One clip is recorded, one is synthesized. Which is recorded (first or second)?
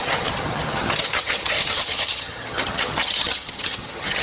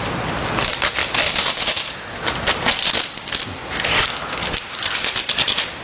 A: second